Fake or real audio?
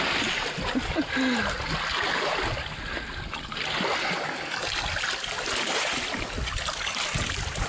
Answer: real